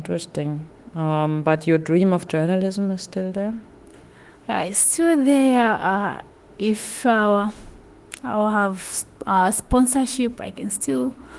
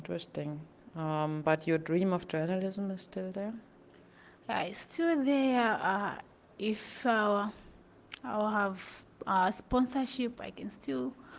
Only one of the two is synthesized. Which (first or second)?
first